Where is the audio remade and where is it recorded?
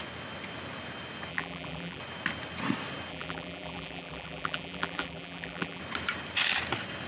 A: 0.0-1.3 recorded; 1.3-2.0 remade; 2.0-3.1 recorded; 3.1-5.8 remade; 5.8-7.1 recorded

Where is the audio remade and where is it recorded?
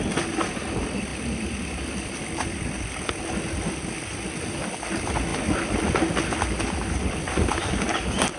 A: 0.0-1.1 recorded; 1.1-4.4 remade; 4.4-5.3 recorded; 5.3-8.4 remade